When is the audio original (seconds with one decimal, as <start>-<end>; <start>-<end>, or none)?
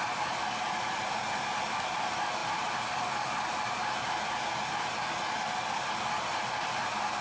0.0-7.2